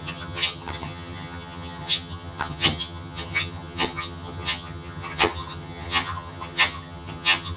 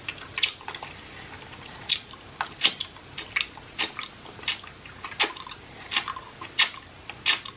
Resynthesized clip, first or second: first